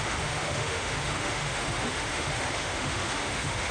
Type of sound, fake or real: fake